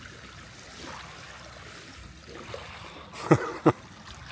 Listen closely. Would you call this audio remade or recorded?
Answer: recorded